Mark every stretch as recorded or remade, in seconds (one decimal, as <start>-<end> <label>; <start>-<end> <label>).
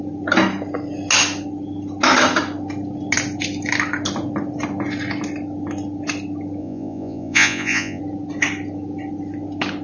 0.0-6.6 recorded; 6.6-8.0 remade; 8.0-9.8 recorded